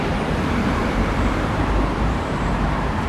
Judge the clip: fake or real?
fake